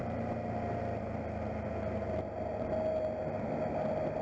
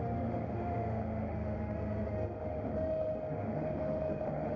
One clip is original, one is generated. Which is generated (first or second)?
second